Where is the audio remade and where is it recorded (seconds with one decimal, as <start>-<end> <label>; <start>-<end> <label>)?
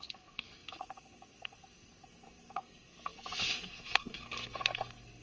0.0-5.2 remade